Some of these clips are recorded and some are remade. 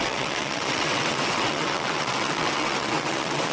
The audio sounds remade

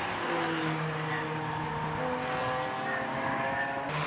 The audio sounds recorded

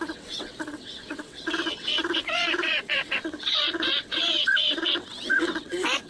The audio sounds remade